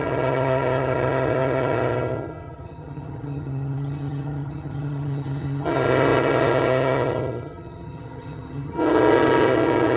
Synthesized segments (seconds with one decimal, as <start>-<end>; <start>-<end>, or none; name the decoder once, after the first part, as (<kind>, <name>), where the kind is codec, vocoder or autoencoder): 0.0-10.0 (vocoder, HiFi-GAN)